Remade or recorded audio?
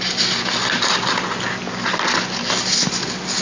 recorded